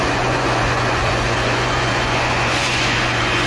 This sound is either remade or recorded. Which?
remade